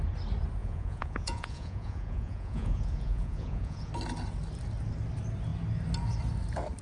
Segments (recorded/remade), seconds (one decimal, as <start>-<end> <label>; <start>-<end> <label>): 0.0-0.6 recorded; 0.6-3.9 remade; 3.9-6.8 recorded